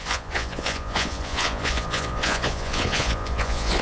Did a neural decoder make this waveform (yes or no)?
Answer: yes